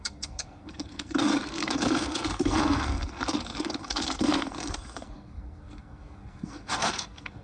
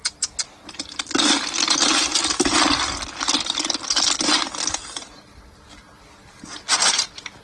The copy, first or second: first